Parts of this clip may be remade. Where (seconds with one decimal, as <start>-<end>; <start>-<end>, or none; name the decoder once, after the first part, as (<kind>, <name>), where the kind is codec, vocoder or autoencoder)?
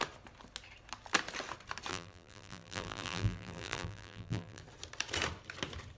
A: 1.9-4.6 (vocoder, BigVGAN v2)